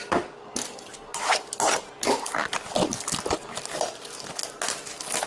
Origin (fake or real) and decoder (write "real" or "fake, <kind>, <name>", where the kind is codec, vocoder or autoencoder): real